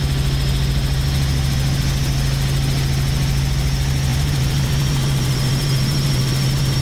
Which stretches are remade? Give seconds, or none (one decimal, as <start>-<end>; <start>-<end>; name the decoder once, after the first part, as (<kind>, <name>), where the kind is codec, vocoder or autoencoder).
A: 4.1-6.8 (vocoder, BigVGAN v2)